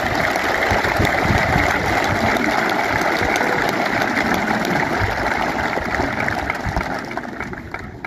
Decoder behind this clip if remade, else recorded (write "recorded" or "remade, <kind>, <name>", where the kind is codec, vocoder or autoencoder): recorded